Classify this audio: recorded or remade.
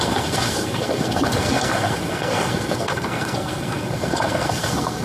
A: remade